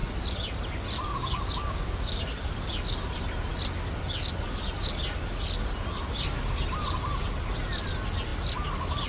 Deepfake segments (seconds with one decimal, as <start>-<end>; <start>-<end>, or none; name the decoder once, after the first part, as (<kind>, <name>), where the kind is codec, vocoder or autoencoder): none